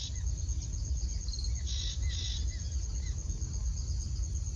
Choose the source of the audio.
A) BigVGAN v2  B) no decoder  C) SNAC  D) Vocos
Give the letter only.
B